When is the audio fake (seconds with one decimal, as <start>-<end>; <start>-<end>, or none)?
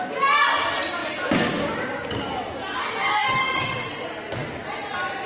2.8-3.4